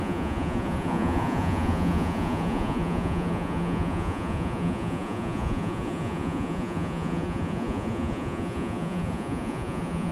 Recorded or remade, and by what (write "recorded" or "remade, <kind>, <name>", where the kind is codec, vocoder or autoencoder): remade, vocoder, Vocos